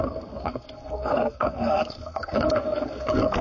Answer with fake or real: fake